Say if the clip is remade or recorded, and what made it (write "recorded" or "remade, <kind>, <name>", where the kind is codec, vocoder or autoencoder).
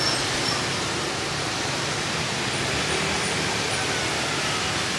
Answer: recorded